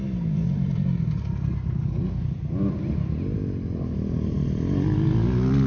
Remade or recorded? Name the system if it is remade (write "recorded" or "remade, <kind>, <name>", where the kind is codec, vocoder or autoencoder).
recorded